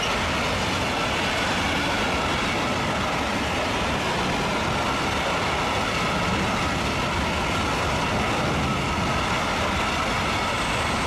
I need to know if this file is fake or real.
real